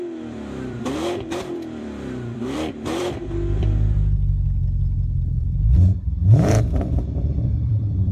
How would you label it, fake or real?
fake